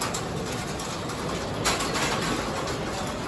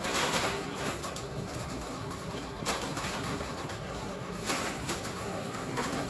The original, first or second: first